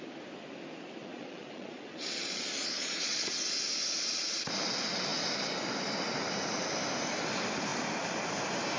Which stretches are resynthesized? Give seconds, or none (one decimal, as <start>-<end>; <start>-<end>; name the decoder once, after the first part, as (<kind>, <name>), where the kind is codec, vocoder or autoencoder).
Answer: 1.0-3.3 (vocoder, Vocos)